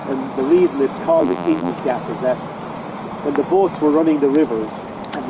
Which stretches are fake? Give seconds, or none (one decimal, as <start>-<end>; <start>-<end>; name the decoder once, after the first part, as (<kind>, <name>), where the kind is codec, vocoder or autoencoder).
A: 1.2-1.7 (vocoder, BigVGAN v2)